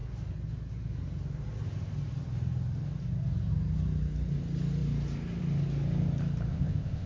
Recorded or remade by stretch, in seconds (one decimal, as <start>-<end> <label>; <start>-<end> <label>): 0.0-6.5 recorded; 6.5-7.1 remade